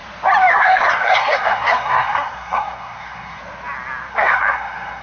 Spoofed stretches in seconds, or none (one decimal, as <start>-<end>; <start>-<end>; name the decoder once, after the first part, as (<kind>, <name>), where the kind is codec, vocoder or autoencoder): 0.5-3.4 (codec, SNAC); 4.1-5.0